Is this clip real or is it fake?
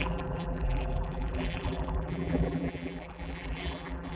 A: fake